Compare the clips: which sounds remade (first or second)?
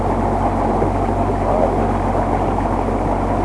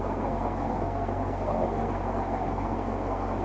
second